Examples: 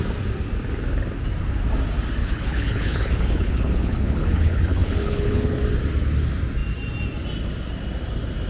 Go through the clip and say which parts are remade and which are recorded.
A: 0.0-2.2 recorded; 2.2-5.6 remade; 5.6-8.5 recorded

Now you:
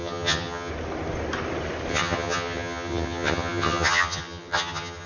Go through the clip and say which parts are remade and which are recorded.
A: 0.0-0.7 remade; 0.7-1.9 recorded; 1.9-5.1 remade